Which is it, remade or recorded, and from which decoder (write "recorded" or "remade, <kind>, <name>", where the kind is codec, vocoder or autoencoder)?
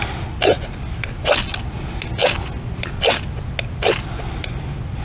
recorded